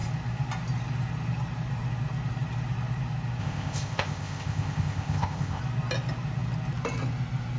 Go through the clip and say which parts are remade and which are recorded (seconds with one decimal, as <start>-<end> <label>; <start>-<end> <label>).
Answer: 0.0-3.4 recorded; 3.4-5.6 remade; 5.6-7.6 recorded